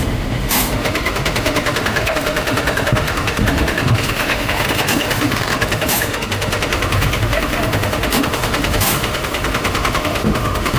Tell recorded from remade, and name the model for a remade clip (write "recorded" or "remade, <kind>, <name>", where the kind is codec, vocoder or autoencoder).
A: remade, autoencoder, DAC-VAE